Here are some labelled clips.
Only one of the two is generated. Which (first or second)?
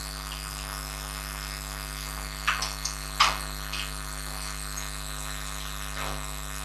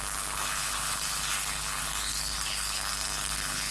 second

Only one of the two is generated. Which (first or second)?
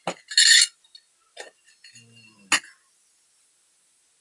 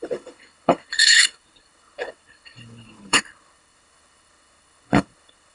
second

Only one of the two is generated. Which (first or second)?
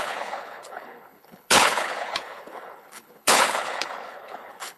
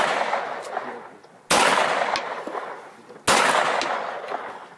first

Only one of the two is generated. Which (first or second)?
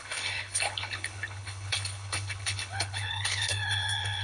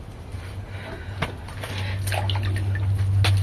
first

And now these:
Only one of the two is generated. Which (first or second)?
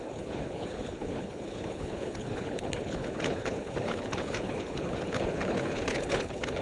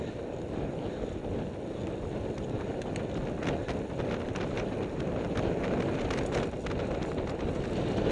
first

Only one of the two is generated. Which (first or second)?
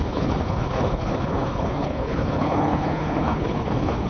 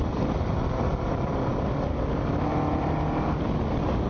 first